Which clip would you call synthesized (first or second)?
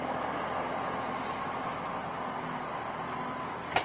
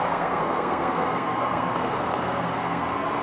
second